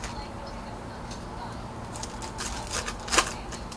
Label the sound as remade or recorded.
recorded